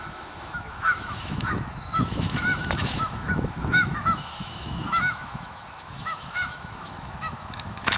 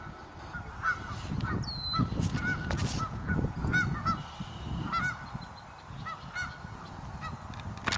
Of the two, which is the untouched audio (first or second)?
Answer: second